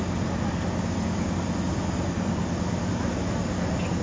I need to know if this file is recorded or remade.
recorded